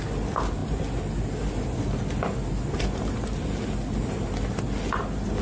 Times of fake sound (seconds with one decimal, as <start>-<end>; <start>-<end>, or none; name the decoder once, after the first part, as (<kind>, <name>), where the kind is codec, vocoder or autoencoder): none